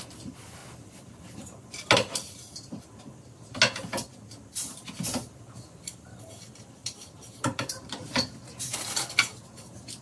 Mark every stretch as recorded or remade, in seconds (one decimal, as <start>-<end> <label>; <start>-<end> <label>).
0.0-6.8 recorded; 6.8-8.9 remade; 8.9-10.0 recorded